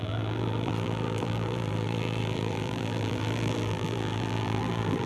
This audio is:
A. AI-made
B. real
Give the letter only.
A